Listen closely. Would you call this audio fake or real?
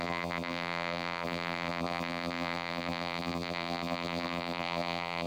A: fake